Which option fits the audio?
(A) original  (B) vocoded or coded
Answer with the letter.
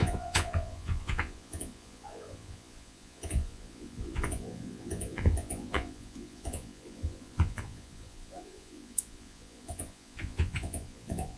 B